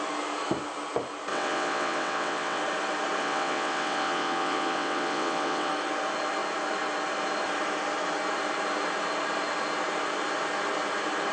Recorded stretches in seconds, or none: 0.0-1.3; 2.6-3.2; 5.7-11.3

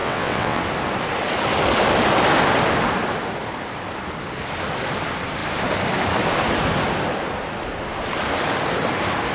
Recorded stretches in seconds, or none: 0.6-9.3

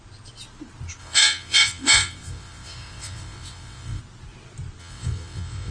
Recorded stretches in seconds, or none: 0.0-1.0; 4.0-4.8

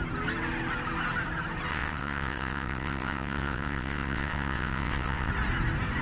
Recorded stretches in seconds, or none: 0.0-1.7; 5.3-6.0

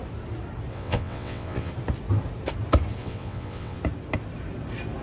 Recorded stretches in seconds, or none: 0.0-0.7; 1.7-3.0; 3.8-5.0

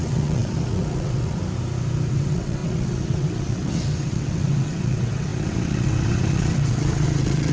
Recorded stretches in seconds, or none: 1.4-2.1

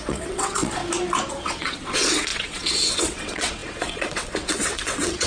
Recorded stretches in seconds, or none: 0.8-1.3

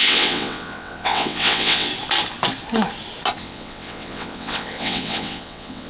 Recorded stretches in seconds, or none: 1.9-3.4